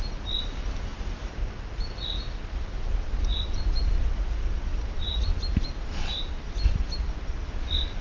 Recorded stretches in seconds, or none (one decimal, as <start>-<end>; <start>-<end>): 0.0-8.0